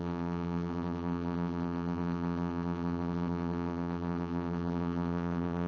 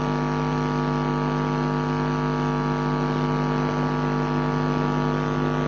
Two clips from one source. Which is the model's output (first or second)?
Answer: first